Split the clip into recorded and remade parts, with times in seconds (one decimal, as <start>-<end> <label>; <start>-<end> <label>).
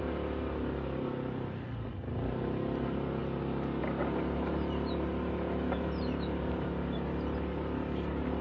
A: 0.0-8.4 recorded